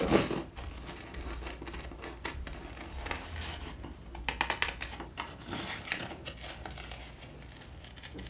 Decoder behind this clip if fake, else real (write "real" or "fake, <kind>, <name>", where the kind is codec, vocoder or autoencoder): real